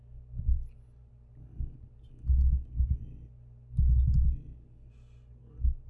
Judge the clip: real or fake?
real